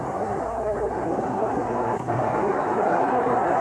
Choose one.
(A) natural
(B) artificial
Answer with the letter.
B